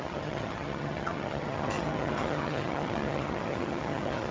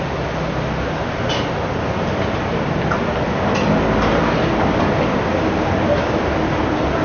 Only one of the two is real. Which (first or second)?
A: second